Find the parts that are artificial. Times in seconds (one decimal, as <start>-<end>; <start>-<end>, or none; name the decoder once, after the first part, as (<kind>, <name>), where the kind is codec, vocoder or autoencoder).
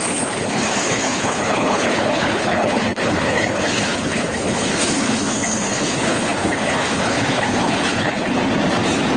0.0-8.4 (codec, HILCodec)